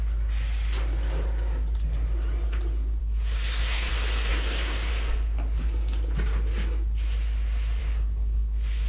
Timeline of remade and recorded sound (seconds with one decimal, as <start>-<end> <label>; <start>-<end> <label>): 0.0-3.0 recorded; 3.0-3.9 remade; 3.9-4.3 recorded; 4.3-4.9 remade; 4.9-7.8 recorded; 7.8-8.9 remade